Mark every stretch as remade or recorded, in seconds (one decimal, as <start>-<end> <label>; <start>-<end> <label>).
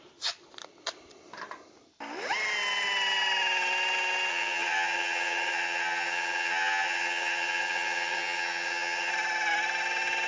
0.0-4.3 recorded; 4.3-9.1 remade; 9.1-10.3 recorded